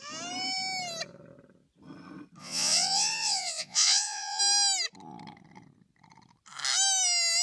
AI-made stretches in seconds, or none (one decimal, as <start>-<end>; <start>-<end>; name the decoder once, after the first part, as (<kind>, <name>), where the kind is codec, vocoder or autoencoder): 2.4-4.4 (vocoder, Vocos)